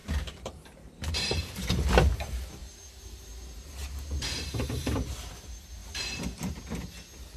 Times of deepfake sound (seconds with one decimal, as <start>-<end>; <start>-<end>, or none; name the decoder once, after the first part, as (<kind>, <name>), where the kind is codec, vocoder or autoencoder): 0.0-1.9 (vocoder, BigVGAN v2); 2.6-3.3; 3.8-5.3; 5.8-6.6